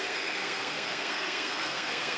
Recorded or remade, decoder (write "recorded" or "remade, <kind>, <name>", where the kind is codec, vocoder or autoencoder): remade, codec, SNAC